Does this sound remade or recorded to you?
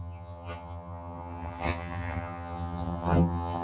remade